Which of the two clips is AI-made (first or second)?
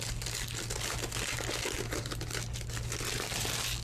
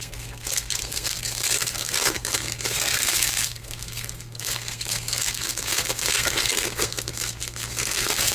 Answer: second